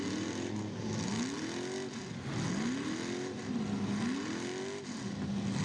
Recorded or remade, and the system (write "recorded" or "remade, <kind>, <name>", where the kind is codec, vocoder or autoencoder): recorded